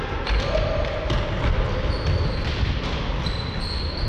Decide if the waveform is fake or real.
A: real